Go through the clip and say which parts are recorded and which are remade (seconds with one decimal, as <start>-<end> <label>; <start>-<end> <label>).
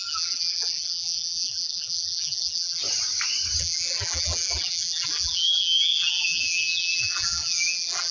0.0-2.8 remade; 2.8-3.6 recorded; 3.6-8.1 remade